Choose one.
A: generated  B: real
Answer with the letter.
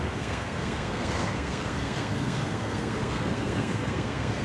A